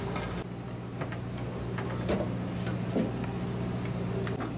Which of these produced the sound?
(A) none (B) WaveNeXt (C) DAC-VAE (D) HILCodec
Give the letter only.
A